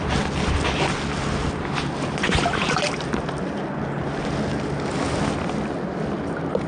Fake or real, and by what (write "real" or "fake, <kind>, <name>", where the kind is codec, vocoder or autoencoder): real